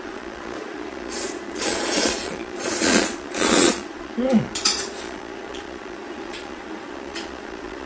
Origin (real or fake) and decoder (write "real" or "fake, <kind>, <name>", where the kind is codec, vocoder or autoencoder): fake, vocoder, Vocos